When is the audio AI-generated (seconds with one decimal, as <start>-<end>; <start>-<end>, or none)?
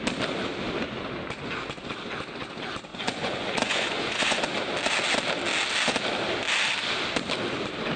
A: 2.9-4.4